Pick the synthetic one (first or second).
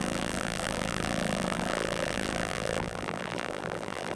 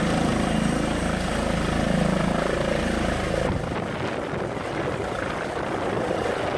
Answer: first